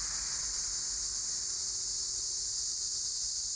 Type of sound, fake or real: real